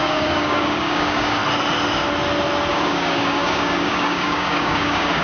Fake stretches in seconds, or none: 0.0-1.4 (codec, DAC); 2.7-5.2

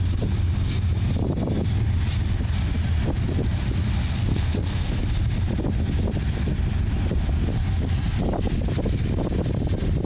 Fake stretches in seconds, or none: 4.3-5.0 (codec, SNAC)